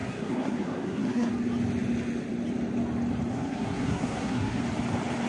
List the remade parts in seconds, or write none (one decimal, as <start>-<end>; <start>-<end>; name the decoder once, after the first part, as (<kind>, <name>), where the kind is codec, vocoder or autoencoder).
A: 0.0-1.3 (codec, SNAC); 3.3-4.6